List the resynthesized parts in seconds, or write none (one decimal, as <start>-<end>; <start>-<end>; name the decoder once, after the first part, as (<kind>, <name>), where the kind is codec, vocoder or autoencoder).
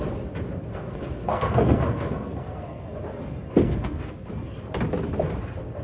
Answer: 0.7-2.8 (codec, SNAC); 3.6-4.3